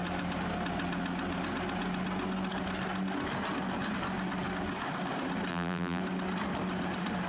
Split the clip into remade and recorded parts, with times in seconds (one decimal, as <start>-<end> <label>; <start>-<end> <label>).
0.0-5.5 recorded; 5.5-6.0 remade; 6.0-7.3 recorded